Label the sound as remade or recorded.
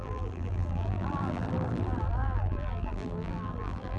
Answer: remade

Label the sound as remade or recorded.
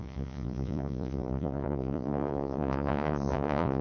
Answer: remade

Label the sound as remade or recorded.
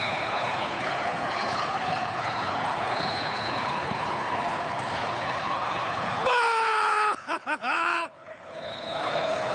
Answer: remade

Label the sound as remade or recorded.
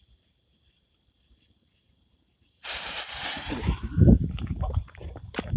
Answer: remade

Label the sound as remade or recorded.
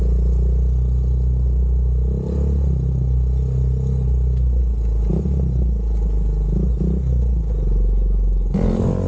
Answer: recorded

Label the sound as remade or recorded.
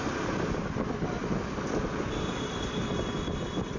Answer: recorded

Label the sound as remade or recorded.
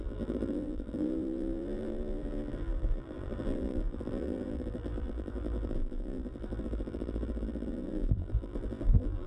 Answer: remade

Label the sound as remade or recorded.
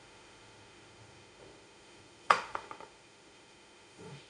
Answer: remade